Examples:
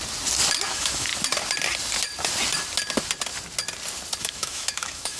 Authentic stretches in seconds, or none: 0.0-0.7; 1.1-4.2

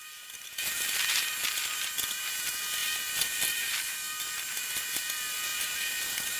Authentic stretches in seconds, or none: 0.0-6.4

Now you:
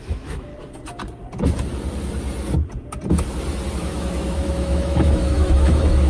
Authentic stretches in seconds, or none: 0.5-3.7

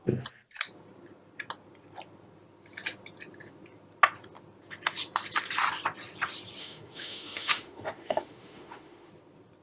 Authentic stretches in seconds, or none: 0.0-6.6; 9.1-9.6

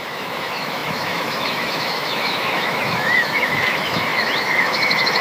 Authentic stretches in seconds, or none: none